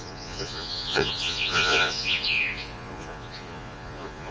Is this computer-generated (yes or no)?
yes